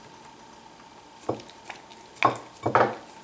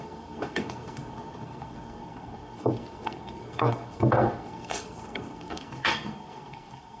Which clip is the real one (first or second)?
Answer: first